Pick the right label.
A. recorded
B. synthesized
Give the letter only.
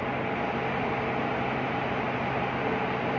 A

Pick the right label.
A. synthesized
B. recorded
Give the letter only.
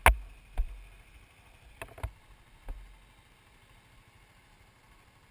B